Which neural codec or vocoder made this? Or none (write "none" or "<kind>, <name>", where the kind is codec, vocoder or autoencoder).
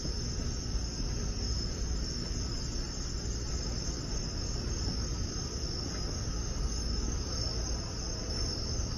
none